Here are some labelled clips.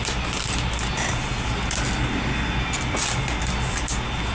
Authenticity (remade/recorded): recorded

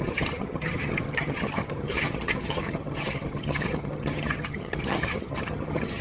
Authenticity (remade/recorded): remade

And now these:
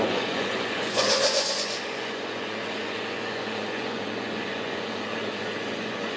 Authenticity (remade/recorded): remade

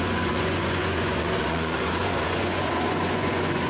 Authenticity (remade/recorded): remade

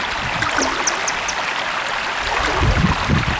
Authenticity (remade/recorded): recorded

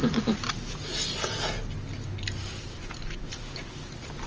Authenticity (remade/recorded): recorded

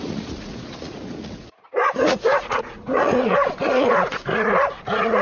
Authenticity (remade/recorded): remade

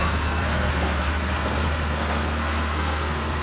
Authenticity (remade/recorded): remade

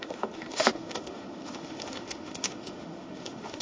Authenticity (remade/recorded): remade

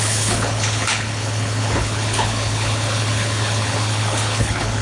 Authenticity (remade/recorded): remade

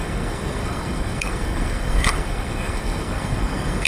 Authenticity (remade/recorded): remade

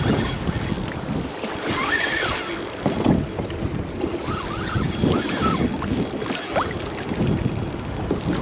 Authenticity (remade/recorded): recorded